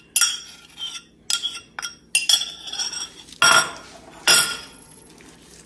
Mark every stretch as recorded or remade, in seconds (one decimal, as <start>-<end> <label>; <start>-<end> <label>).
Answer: 0.0-4.3 recorded; 4.3-5.1 remade; 5.1-5.7 recorded